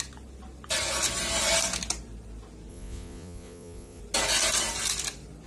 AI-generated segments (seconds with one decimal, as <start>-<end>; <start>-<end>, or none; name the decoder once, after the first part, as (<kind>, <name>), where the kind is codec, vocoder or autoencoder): 2.7-4.0 (vocoder, Vocos)